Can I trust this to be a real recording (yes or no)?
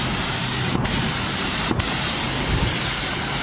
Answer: no